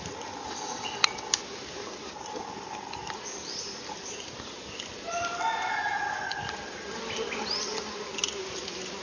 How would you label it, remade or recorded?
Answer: recorded